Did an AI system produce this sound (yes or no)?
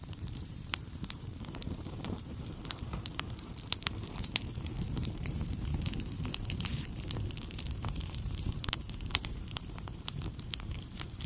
yes